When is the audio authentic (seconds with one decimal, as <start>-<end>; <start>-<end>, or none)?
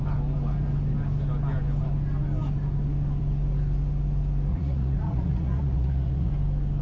0.0-4.5; 6.3-6.8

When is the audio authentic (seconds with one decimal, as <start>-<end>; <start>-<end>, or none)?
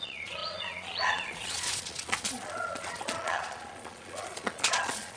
none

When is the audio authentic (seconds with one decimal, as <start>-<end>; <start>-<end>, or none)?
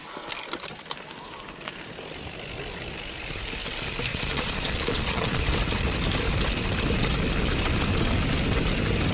0.0-4.1; 5.4-9.1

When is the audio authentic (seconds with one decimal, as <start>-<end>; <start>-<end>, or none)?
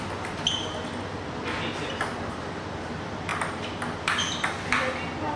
0.0-5.4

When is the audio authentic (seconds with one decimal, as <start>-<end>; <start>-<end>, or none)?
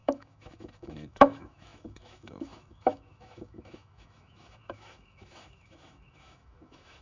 none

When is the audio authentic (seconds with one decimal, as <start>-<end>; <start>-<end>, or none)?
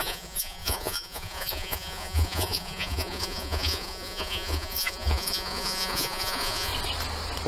6.7-7.5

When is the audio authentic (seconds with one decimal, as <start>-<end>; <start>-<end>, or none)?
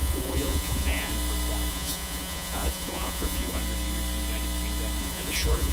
1.1-1.7; 3.6-5.0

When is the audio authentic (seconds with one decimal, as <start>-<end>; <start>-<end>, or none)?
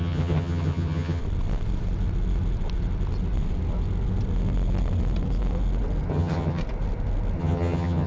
1.2-6.1; 6.6-7.4